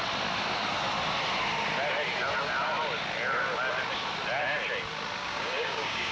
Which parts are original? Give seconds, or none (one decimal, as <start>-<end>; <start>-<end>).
0.0-5.2

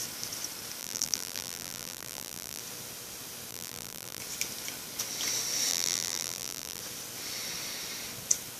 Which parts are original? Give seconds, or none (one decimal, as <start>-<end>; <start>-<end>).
0.0-0.8; 2.6-3.5; 4.2-5.7; 6.8-8.6

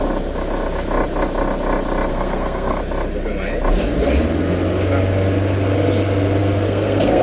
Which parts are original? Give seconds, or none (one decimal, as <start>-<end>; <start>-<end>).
0.0-2.1; 2.8-6.4

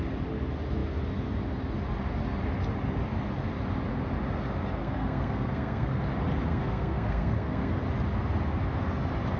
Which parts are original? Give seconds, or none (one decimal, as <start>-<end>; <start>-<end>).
0.0-4.8; 6.0-6.5; 7.8-9.4

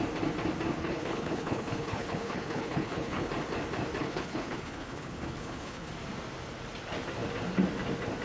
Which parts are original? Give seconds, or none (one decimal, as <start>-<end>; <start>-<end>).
0.0-0.8; 3.3-4.0; 5.9-8.2

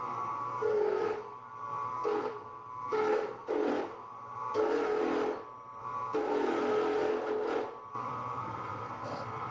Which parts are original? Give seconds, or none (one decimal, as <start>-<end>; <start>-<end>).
5.0-5.8; 7.1-7.9

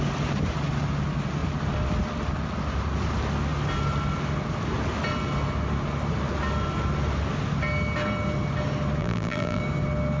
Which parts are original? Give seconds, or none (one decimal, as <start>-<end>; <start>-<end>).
0.0-9.0; 9.6-10.2

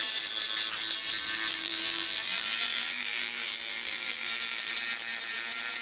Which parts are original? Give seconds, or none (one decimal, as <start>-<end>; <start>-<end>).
0.0-1.5; 4.7-5.8